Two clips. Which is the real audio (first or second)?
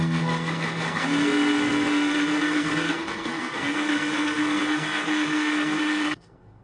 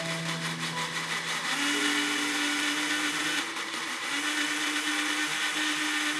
second